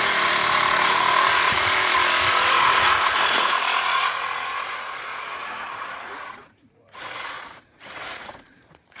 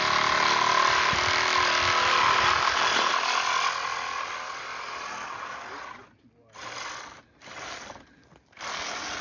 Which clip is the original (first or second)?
second